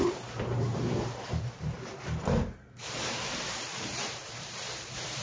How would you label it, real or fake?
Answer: fake